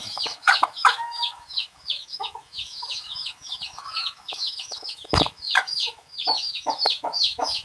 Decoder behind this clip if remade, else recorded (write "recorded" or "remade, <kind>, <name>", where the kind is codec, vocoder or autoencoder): remade, autoencoder, DAC-VAE